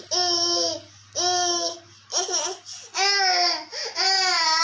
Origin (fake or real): real